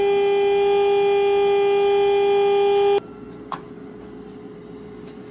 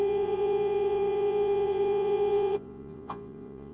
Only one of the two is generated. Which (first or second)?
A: second